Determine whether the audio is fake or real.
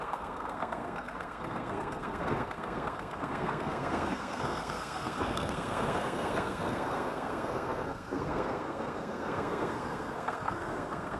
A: fake